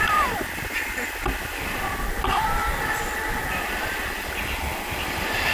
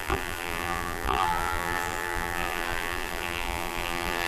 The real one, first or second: first